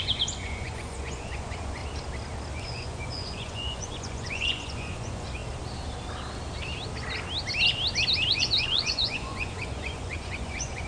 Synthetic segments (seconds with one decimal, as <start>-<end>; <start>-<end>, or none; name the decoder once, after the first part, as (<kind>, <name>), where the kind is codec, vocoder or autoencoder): 0.0-1.8 (vocoder, Vocos); 2.6-5.4; 8.3-10.9